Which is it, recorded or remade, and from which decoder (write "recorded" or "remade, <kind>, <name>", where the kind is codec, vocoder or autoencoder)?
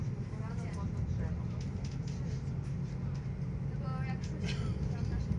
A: recorded